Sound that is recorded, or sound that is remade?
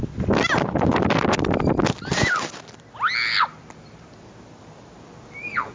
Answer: recorded